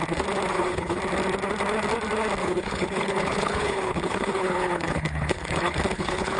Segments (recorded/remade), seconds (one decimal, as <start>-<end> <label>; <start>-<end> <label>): 0.0-0.5 recorded; 0.5-1.0 remade; 1.0-2.4 recorded; 2.4-6.4 remade